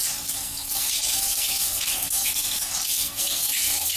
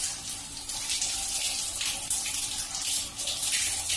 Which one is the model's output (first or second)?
first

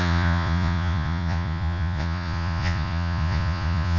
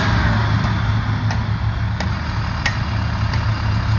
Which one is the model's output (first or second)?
first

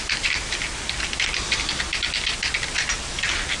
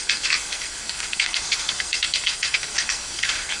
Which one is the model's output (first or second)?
second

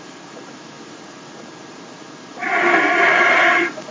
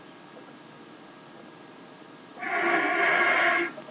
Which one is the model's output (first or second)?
first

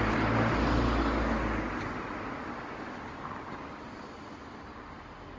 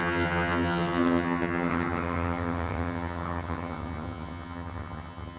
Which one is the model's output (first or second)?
second